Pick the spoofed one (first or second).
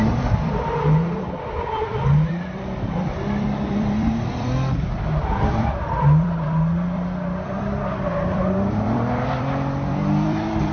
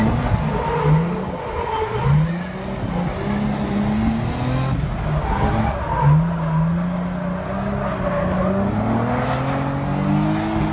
first